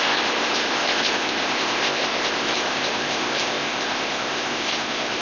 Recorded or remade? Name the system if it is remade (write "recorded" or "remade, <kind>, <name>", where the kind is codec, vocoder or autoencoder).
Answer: remade, codec, ZipCodec